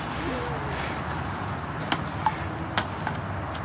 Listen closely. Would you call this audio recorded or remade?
recorded